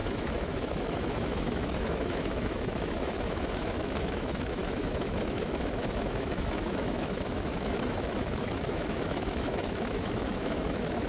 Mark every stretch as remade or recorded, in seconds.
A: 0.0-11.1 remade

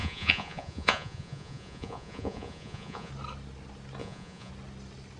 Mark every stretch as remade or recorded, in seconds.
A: 0.0-3.1 remade; 3.1-4.0 recorded; 4.0-4.5 remade; 4.5-5.2 recorded

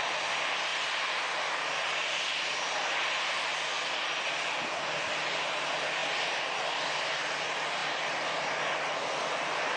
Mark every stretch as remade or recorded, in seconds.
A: 0.0-9.8 recorded

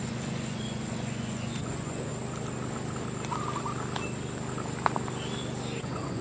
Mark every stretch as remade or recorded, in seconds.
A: 0.0-2.1 remade; 2.1-5.8 recorded; 5.8-6.2 remade

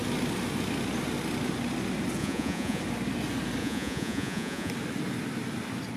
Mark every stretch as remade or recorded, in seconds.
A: 0.0-2.2 recorded; 2.2-2.8 remade; 2.8-3.6 recorded; 3.6-4.7 remade; 4.7-6.0 recorded

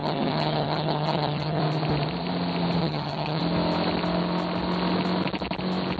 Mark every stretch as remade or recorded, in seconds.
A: 0.0-1.6 remade; 1.6-2.8 recorded; 2.8-3.4 remade; 3.4-6.0 recorded

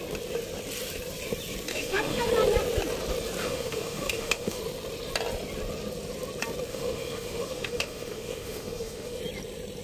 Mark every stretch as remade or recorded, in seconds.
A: 0.0-1.7 recorded; 1.7-2.3 remade; 2.3-3.4 recorded; 3.4-4.6 remade; 4.6-6.7 recorded; 6.7-9.2 remade; 9.2-9.8 recorded

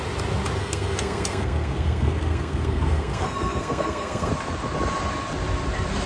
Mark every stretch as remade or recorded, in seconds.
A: 0.0-0.6 recorded; 0.6-4.3 remade; 4.3-6.1 recorded